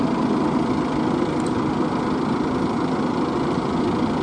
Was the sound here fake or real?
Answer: real